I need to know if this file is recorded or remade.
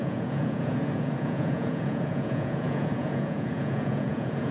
remade